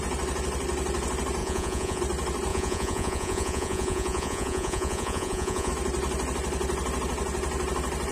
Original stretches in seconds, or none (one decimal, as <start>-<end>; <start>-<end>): 0.0-1.4; 2.0-2.5; 5.7-8.1